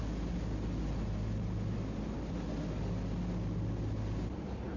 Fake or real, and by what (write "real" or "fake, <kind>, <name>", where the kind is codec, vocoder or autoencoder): real